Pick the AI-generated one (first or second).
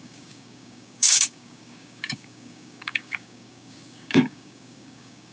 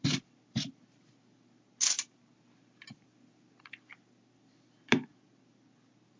first